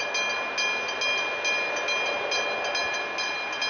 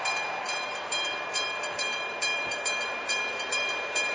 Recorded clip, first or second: first